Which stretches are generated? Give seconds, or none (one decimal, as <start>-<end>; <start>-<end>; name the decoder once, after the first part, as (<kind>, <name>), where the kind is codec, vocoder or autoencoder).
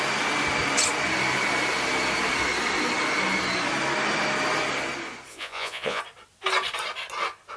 5.3-6.0 (vocoder, Vocos)